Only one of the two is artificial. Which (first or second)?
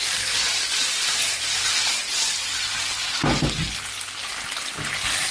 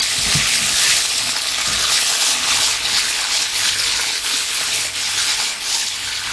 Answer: second